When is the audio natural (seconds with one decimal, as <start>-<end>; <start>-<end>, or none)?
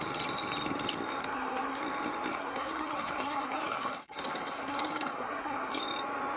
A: 0.0-1.2; 1.8-2.3; 5.8-6.4